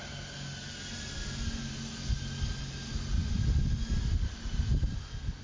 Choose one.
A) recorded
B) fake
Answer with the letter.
A